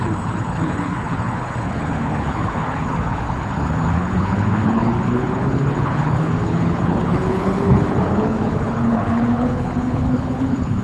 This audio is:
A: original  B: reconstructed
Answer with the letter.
B